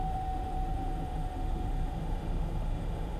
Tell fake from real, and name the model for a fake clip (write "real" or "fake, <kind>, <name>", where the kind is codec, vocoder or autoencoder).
fake, autoencoder, DAC-VAE